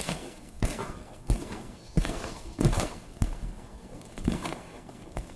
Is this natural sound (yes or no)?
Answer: no